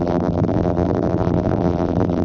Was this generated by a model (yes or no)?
yes